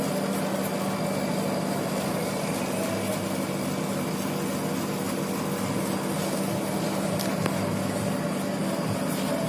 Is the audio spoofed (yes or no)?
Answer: no